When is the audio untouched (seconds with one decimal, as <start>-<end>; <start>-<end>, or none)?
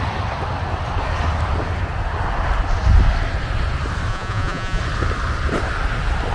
0.0-4.1; 4.8-6.3